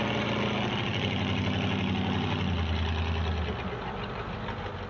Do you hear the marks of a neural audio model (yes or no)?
no